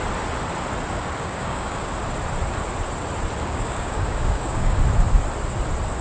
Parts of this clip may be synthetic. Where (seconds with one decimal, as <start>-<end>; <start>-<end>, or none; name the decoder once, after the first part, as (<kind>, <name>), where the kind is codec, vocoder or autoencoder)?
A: 0.9-1.9 (codec, DAC); 3.4-4.8